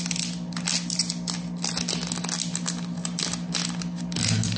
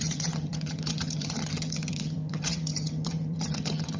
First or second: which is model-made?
second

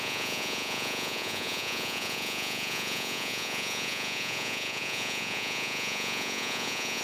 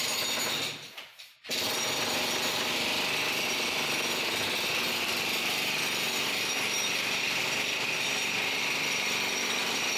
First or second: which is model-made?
first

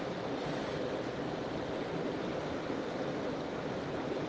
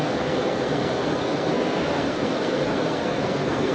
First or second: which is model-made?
second